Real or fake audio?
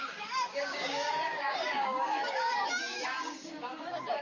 fake